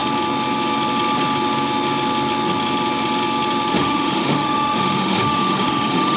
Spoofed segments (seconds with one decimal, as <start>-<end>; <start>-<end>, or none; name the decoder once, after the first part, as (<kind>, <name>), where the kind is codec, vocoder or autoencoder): 3.7-6.2 (autoencoder, DAC-VAE)